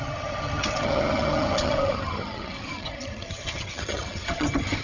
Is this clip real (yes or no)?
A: no